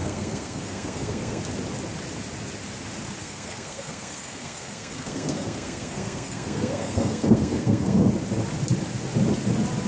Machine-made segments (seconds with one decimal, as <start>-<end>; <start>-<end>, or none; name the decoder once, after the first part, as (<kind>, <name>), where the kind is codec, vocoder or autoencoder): 0.0-1.4 (codec, SNAC); 3.2-8.1